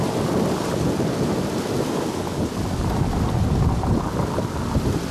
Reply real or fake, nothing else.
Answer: real